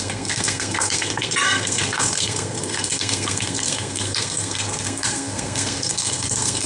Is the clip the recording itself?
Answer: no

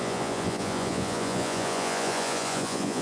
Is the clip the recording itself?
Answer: no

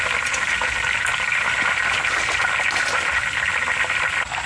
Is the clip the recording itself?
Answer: yes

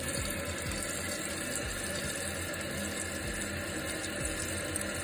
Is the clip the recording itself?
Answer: yes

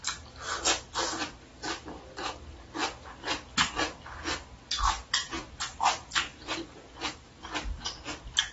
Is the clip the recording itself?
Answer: yes